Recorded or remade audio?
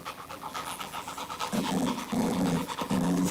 remade